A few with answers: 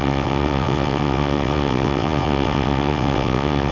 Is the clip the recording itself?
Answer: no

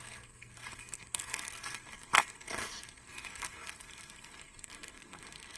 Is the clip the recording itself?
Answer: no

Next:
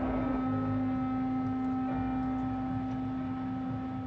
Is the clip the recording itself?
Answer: yes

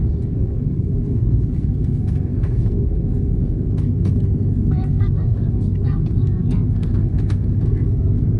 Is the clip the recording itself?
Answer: no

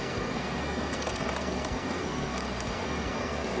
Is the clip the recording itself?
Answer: no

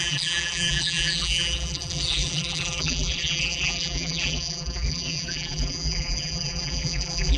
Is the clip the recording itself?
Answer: no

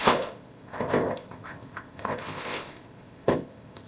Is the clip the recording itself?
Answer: no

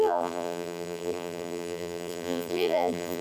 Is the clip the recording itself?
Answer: no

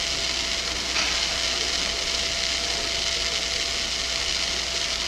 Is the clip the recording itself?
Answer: yes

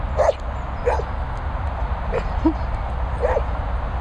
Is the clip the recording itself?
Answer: yes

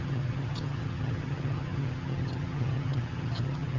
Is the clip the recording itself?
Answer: no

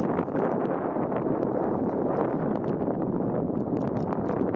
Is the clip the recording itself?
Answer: yes